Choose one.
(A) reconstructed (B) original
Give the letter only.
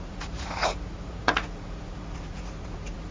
A